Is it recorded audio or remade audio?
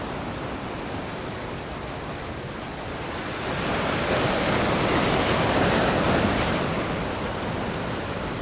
recorded